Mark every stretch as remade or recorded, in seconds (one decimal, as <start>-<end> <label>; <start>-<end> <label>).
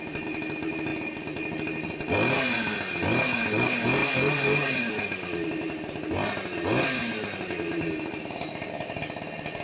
0.0-4.0 recorded; 4.0-4.9 remade; 4.9-7.0 recorded; 7.0-9.0 remade; 9.0-9.6 recorded